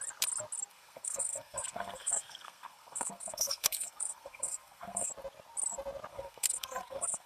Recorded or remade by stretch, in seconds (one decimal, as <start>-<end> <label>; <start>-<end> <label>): 0.0-0.7 recorded; 0.7-5.1 remade; 5.1-6.1 recorded; 6.1-7.3 remade